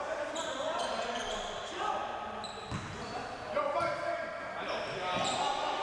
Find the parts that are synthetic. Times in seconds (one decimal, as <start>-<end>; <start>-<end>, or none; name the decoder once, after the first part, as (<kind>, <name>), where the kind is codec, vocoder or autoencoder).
none